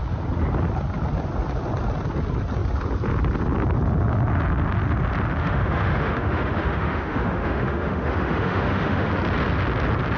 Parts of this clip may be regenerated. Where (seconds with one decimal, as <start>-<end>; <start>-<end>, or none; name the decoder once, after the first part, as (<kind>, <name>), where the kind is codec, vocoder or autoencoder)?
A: 5.4-9.1 (autoencoder, DAC-VAE)